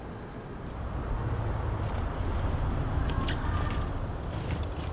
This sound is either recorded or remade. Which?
recorded